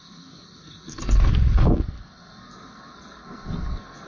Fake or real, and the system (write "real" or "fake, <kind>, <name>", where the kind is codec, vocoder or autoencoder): fake, codec, SNAC